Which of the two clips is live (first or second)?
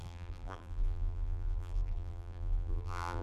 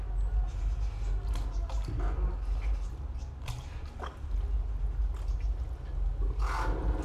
second